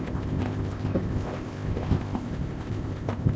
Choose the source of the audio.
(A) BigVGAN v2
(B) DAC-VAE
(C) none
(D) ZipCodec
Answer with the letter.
D